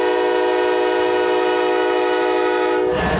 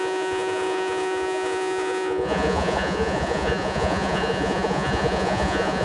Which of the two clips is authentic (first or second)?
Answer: first